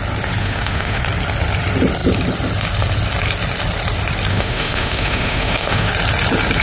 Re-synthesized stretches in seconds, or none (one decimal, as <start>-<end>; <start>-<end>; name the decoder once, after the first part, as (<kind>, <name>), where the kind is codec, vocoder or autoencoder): 0.4-1.0 (autoencoder, DAC-VAE); 4.3-5.9